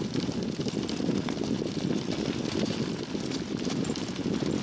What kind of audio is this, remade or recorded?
recorded